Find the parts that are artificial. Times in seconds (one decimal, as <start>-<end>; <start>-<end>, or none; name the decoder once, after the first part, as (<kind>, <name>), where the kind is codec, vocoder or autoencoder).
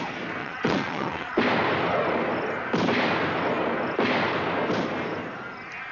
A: 0.4-1.4 (vocoder, WaveNeXt)